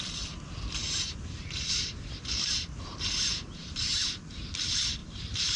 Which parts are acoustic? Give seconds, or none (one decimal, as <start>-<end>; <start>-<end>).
0.0-0.8; 4.0-5.0